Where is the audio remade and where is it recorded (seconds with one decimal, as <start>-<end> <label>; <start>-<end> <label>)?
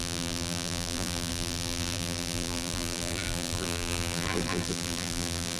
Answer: 0.0-5.6 remade